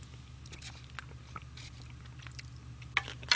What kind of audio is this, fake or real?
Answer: real